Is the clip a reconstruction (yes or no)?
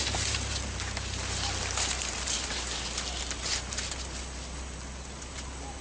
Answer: no